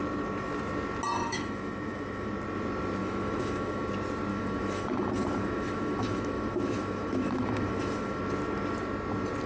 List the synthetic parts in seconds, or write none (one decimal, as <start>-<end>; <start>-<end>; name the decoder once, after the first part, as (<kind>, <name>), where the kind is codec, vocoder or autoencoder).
1.2-2.3 (autoencoder, DAC-VAE); 3.0-3.9; 4.3-8.2